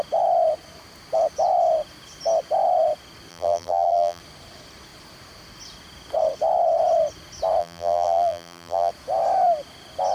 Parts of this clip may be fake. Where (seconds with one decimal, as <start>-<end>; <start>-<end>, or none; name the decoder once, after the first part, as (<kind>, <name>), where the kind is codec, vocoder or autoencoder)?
3.3-4.2 (vocoder, BigVGAN v2); 7.6-8.9